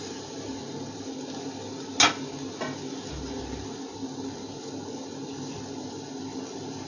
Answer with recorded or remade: recorded